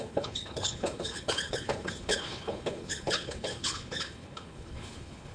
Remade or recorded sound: remade